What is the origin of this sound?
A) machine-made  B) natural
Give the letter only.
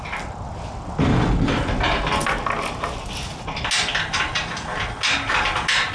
B